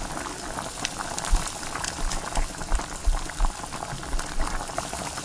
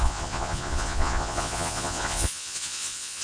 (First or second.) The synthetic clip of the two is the second